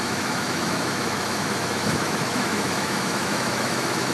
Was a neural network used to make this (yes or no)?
yes